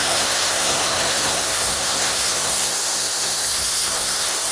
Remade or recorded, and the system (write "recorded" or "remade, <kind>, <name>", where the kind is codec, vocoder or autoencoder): remade, codec, SNAC